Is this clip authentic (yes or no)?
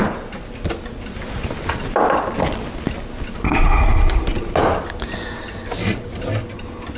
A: yes